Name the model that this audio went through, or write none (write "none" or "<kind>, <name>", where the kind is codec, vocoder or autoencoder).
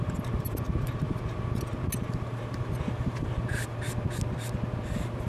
none